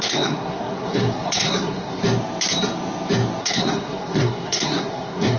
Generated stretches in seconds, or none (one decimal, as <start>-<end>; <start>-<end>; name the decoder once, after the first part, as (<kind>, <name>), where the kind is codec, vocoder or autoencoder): 0.0-2.0 (codec, SNAC); 3.4-5.4